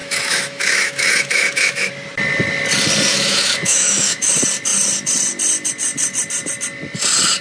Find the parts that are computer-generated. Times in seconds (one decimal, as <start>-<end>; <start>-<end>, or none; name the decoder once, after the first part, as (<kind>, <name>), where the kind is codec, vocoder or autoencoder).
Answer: 0.0-1.9 (autoencoder, DAC-VAE); 3.1-4.3